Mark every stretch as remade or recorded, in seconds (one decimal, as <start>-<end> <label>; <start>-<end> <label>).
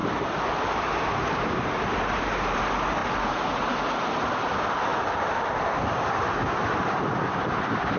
0.0-1.0 recorded; 1.0-4.9 remade; 4.9-6.8 recorded; 6.8-8.0 remade